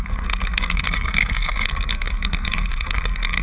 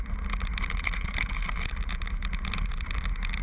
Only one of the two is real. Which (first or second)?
second